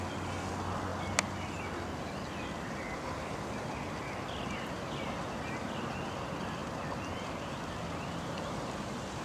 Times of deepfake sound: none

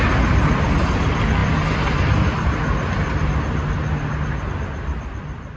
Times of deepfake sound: none

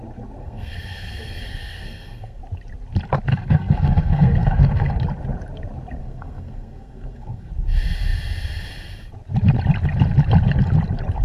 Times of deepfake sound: 0.4-2.4 (codec, SNAC); 3.3-4.9; 6.0-7.5

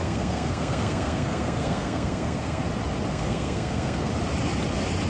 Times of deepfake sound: 0.0-2.6 (codec, SNAC); 3.1-4.1

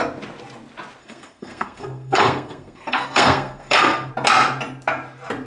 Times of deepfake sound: 1.0-4.1 (codec, SNAC)

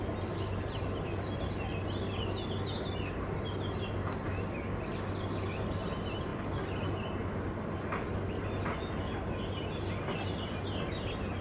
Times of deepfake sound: none

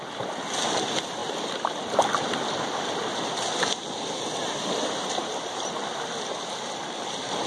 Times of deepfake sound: none

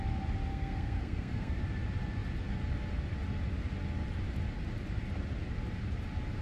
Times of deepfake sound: 0.5-1.6 (codec, SNAC)